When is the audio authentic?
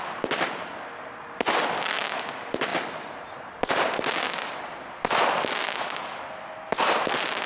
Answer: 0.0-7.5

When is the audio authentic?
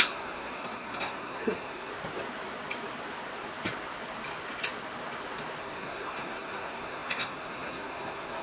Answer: 1.9-5.6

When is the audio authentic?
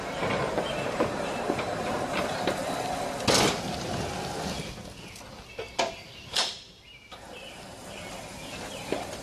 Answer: 2.6-5.8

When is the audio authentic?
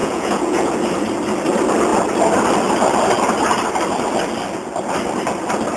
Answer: 0.7-5.8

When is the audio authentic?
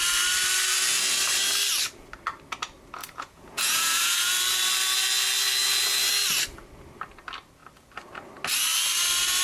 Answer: 0.0-3.0; 4.3-9.4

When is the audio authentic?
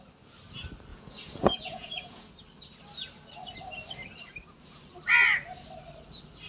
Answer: 0.0-0.9; 2.3-6.5